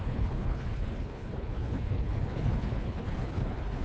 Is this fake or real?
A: fake